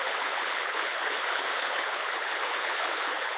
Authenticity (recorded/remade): remade